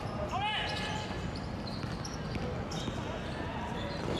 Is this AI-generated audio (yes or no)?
no